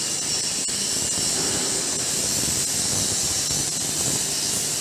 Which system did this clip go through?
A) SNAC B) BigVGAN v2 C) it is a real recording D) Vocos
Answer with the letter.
C